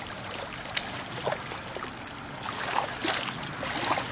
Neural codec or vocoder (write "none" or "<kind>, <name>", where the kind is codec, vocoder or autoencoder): none